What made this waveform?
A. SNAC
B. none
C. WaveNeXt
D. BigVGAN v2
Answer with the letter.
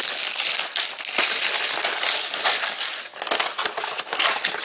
B